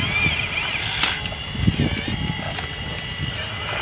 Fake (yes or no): no